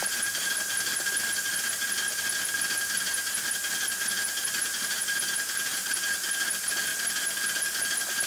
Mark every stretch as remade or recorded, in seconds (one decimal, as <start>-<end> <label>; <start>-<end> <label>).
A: 0.0-8.3 recorded